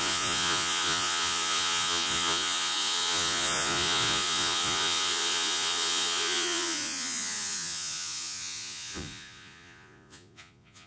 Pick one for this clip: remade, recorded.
remade